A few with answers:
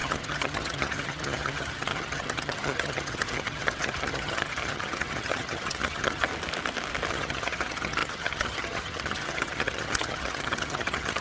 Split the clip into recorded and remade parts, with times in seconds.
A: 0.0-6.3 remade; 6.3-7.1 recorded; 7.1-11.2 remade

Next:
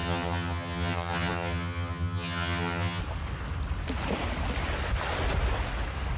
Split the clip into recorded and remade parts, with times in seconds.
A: 0.0-3.0 remade; 3.0-6.2 recorded